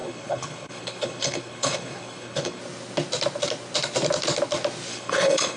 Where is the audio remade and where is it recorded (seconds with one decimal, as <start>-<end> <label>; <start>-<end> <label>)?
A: 0.0-2.6 remade; 2.6-4.9 recorded; 4.9-5.6 remade